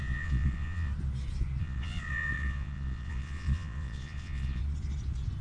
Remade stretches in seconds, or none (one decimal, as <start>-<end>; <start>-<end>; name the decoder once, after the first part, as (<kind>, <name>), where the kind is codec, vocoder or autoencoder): 0.0-0.9 (vocoder, Vocos); 1.6-4.6